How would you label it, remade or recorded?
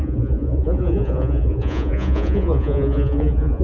remade